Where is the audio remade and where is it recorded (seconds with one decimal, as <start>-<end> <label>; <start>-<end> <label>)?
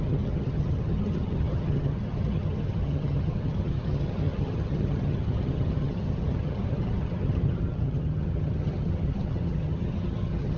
0.0-10.6 remade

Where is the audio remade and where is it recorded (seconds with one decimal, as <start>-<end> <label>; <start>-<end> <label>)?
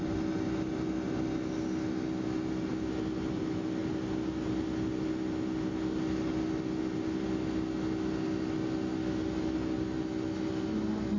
0.0-11.2 recorded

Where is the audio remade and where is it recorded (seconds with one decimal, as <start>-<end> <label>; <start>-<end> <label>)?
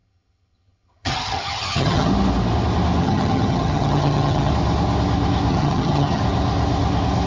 0.0-2.1 remade; 2.1-3.0 recorded; 3.0-4.5 remade; 4.5-5.5 recorded; 5.5-6.2 remade; 6.2-7.3 recorded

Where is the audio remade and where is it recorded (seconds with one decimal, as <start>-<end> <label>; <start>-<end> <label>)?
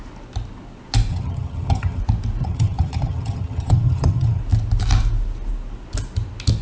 0.0-1.1 recorded; 1.1-2.0 remade; 2.0-2.4 recorded; 2.4-4.4 remade; 4.4-6.6 recorded